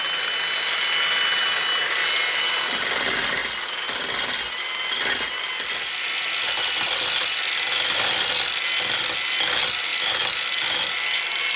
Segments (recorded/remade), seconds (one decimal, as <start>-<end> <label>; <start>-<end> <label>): 0.0-11.6 recorded